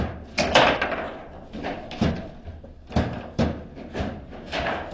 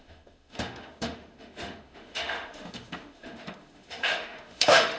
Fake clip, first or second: second